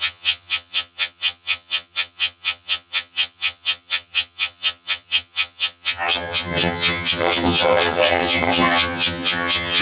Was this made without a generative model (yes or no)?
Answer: no